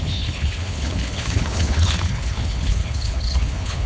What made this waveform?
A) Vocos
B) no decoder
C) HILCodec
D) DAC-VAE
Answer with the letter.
C